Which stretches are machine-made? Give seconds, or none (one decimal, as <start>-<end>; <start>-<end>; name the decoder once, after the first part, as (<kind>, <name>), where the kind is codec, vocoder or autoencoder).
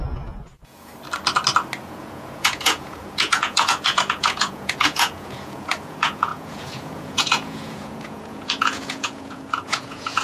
0.0-0.9 (vocoder, Vocos); 1.8-10.2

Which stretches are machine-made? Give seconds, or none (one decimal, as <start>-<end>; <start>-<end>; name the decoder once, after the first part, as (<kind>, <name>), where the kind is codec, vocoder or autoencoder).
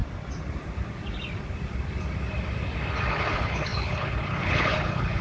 3.1-5.2 (codec, HILCodec)